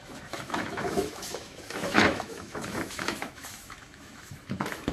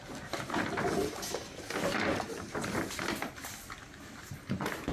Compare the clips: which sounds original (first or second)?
second